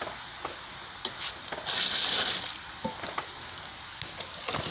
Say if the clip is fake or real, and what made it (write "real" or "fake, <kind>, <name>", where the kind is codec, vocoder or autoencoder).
real